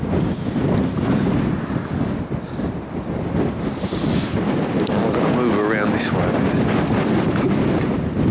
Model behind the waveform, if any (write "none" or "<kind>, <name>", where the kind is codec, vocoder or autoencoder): none